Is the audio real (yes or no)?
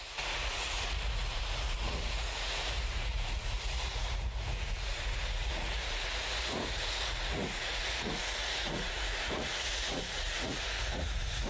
no